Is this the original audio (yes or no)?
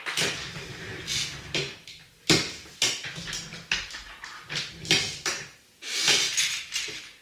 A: yes